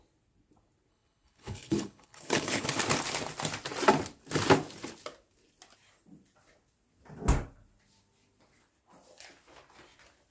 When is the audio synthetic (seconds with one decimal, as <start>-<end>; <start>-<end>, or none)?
0.9-2.8